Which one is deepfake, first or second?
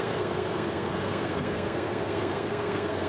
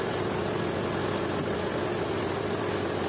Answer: first